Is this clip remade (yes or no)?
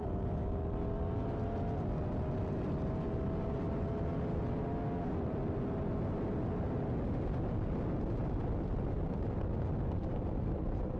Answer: no